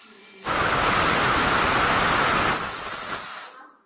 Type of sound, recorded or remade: recorded